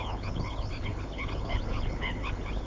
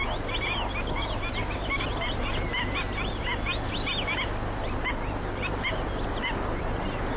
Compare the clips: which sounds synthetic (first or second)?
first